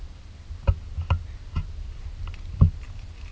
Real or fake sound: real